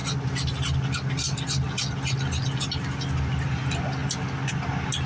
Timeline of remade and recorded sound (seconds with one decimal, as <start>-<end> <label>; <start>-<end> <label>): 0.0-5.1 recorded